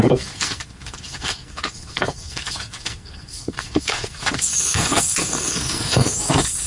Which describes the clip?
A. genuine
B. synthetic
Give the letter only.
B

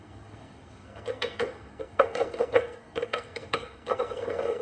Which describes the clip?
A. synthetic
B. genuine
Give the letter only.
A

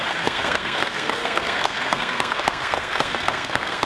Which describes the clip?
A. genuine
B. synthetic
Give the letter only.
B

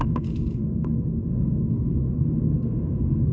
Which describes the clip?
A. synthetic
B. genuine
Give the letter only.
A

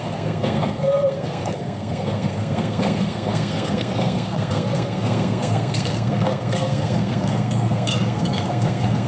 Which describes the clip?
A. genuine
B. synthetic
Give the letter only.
B